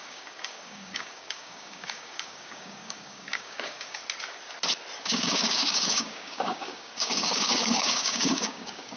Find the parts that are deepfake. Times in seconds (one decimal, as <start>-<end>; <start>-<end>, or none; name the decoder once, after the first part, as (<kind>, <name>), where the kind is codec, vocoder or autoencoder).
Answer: 0.0-4.0 (codec, DAC); 5.0-9.0